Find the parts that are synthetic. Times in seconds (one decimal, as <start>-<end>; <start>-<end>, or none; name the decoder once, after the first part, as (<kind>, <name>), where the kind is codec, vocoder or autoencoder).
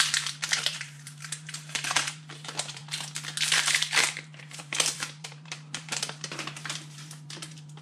0.0-2.8 (vocoder, BigVGAN v2); 3.4-7.8